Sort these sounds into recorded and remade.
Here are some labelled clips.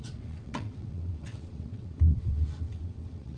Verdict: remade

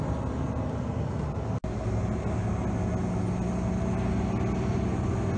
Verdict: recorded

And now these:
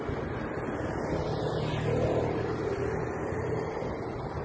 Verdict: recorded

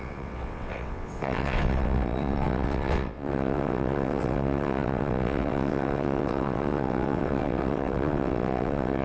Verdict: remade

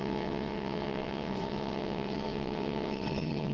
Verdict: remade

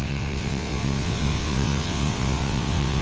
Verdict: remade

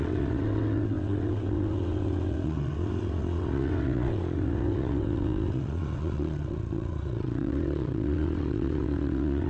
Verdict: remade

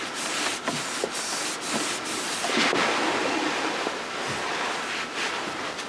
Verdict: recorded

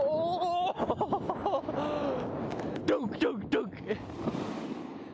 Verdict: recorded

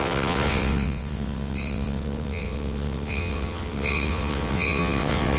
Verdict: remade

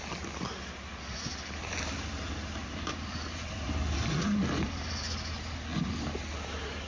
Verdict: recorded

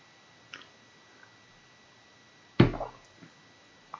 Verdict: recorded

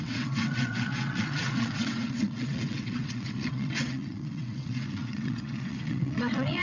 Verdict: remade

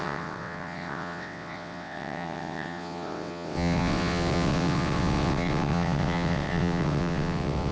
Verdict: remade